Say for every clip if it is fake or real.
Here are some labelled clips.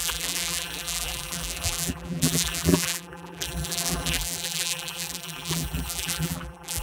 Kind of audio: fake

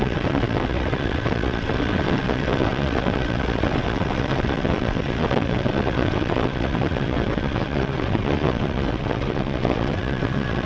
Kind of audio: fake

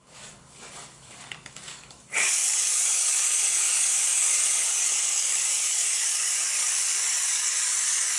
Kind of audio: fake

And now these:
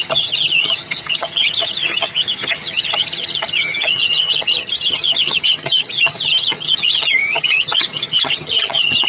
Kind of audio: fake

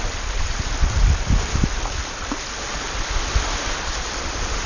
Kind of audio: real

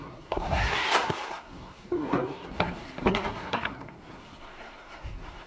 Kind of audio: fake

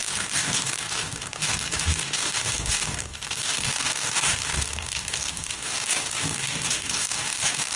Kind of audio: fake